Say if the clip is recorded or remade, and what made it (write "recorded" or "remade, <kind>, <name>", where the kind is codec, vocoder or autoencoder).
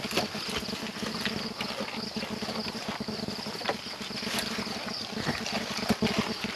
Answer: recorded